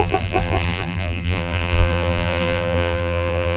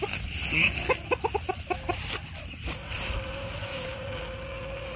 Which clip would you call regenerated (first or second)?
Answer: first